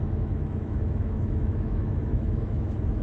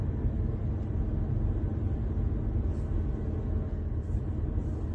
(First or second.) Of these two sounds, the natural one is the second